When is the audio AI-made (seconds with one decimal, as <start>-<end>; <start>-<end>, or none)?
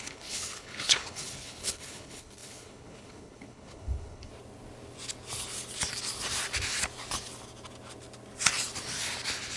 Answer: 0.0-4.3